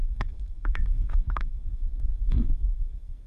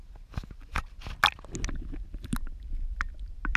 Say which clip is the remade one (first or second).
first